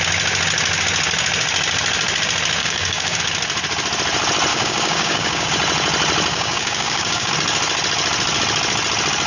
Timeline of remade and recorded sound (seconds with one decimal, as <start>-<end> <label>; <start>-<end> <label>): 0.0-2.6 recorded; 2.6-3.2 remade; 3.2-4.5 recorded; 4.5-5.5 remade; 5.5-6.3 recorded; 6.3-7.3 remade; 7.3-9.3 recorded